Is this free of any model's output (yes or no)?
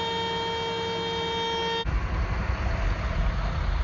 yes